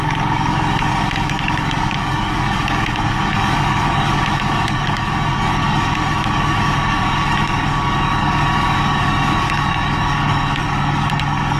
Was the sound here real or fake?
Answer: fake